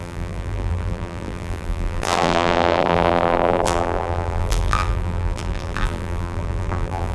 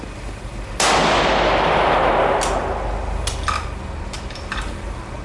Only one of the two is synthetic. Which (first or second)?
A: first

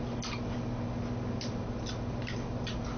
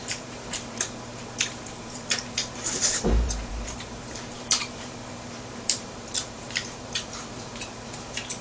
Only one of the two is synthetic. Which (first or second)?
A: second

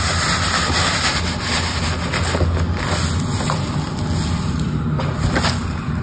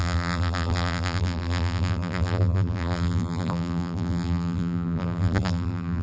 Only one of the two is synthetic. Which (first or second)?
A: second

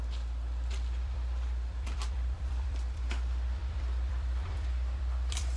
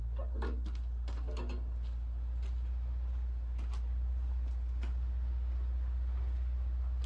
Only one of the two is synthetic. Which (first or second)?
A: first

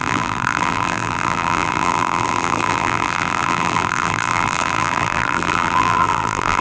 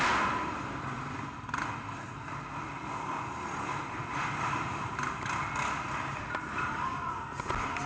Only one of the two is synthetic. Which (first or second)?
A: first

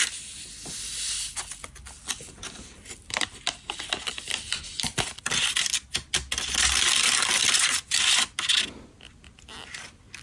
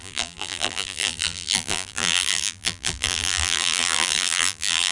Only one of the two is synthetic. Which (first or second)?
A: second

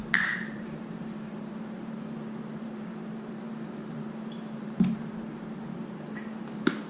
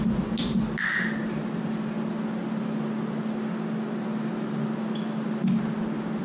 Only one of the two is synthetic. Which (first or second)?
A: first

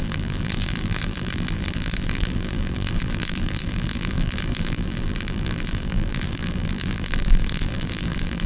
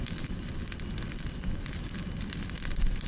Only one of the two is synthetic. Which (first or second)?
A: first